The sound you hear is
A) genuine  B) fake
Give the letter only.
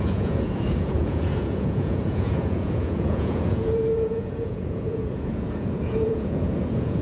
B